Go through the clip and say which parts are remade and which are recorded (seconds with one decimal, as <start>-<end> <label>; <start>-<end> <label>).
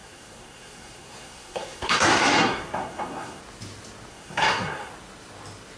0.0-3.4 remade; 3.4-4.1 recorded; 4.1-4.9 remade; 4.9-5.8 recorded